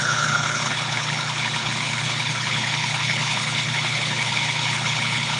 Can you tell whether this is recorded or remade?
remade